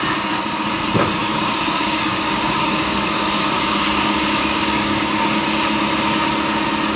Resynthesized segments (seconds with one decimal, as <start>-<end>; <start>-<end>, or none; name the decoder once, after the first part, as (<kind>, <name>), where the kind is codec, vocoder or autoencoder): 1.2-5.4 (codec, DAC)